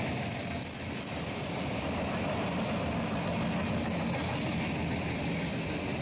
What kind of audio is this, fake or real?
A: real